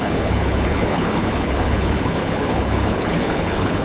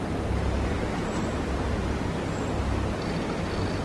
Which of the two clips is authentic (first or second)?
second